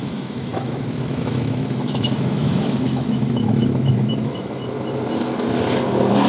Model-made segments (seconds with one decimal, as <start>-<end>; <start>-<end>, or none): 0.0-4.6